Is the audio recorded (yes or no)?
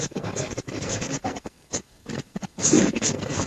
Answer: no